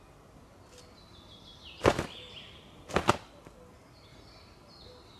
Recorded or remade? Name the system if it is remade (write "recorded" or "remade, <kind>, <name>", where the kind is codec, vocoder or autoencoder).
recorded